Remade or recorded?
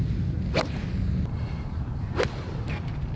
recorded